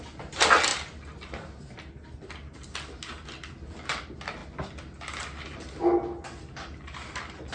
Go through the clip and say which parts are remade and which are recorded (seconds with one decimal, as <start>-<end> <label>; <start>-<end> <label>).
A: 0.0-7.5 recorded